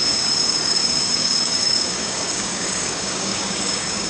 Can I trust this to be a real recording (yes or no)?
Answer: no